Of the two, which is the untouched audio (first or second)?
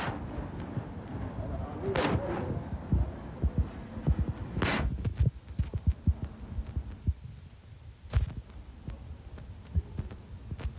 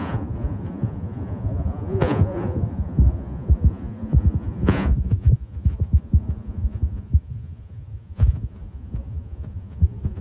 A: first